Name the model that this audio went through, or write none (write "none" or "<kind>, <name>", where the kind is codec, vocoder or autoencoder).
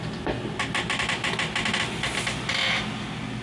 none